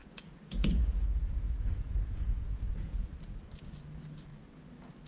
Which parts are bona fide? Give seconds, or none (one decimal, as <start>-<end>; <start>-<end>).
3.1-5.1